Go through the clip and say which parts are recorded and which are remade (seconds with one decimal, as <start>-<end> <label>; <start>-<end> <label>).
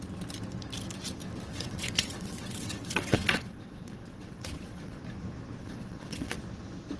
0.0-1.5 recorded; 1.5-5.0 remade; 5.0-5.6 recorded; 5.6-6.4 remade; 6.4-7.0 recorded